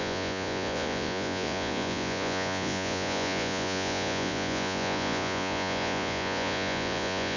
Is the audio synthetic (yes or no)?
yes